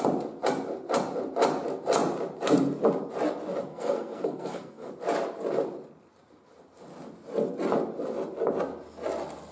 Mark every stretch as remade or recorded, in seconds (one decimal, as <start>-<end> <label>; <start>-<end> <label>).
0.0-3.7 recorded; 3.7-4.9 remade; 4.9-9.5 recorded